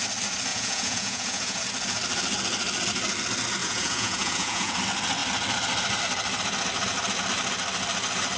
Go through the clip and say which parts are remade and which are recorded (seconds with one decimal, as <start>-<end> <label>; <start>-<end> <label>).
0.0-0.5 recorded; 0.5-1.6 remade; 1.6-3.6 recorded; 3.6-4.7 remade; 4.7-8.4 recorded